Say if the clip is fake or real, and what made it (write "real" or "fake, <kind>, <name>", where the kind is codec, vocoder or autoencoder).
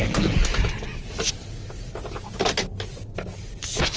real